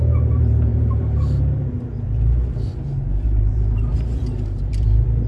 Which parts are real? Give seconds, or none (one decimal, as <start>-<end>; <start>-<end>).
none